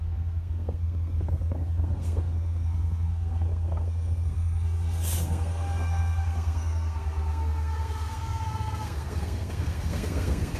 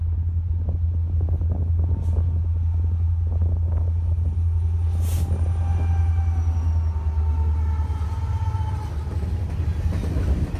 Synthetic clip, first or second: first